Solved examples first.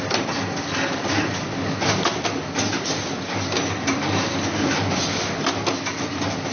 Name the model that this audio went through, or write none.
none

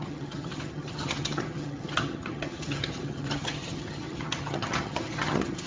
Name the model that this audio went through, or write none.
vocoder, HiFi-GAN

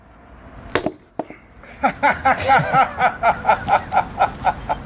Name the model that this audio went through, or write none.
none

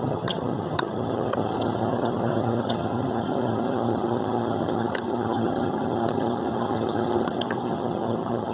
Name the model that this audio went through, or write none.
vocoder, HiFi-GAN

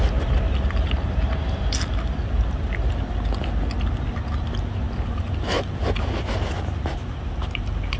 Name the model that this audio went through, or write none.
none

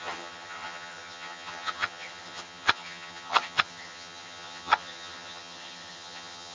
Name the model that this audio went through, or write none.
vocoder, HiFi-GAN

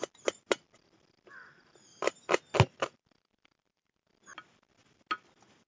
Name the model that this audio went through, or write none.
none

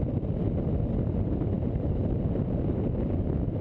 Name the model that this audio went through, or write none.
none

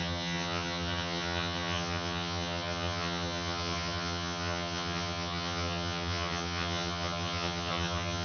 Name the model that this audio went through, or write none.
vocoder, HiFi-GAN